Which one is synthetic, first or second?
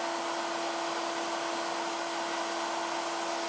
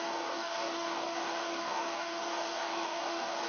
second